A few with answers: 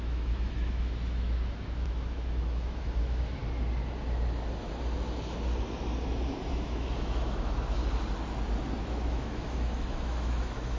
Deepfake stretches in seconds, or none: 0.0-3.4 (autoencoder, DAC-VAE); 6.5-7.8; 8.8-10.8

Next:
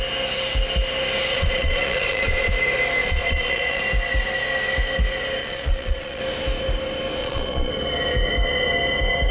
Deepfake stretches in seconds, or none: 1.3-2.5 (vocoder, Vocos); 3.0-3.8; 5.4-6.2; 7.2-7.7

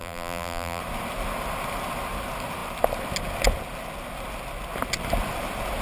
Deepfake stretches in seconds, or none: 0.0-0.8 (vocoder, BigVGAN v2)

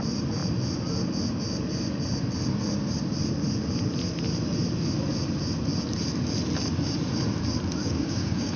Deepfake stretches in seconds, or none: 7.8-8.6 (codec, DAC)